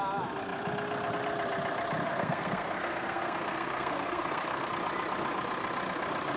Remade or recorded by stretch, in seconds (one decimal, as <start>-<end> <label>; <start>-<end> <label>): 0.0-2.0 recorded; 2.0-4.7 remade; 4.7-6.4 recorded